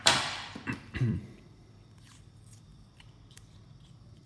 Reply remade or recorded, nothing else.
remade